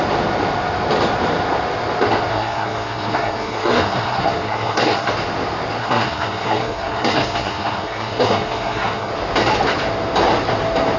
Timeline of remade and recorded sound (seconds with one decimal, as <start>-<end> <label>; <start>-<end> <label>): 0.0-2.3 recorded; 2.3-5.1 remade; 5.1-5.8 recorded; 5.8-9.1 remade; 9.1-11.0 recorded